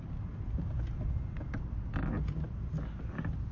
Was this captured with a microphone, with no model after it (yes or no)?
yes